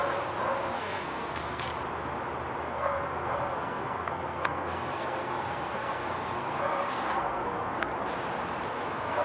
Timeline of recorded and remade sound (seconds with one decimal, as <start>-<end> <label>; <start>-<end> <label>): 0.0-0.7 recorded; 0.7-1.7 remade; 1.7-2.6 recorded; 2.6-7.9 remade; 7.9-8.7 recorded; 8.7-9.2 remade